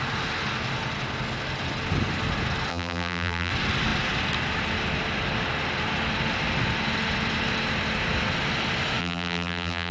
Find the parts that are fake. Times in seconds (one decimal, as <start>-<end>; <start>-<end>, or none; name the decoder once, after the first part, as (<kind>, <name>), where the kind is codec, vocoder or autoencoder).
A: 2.7-3.5 (vocoder, BigVGAN v2); 9.0-9.9